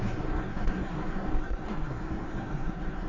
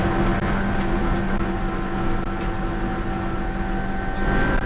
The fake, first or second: first